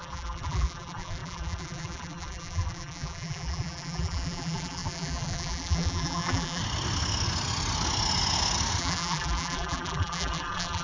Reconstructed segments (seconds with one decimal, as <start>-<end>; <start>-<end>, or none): 0.0-6.6; 8.8-10.8